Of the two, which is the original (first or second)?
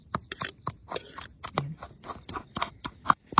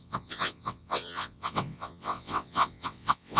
first